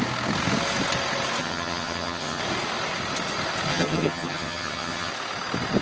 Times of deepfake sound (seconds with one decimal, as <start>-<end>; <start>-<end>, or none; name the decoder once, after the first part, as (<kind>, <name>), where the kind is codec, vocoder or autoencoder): 1.4-2.4 (vocoder, HiFi-GAN); 3.7-5.1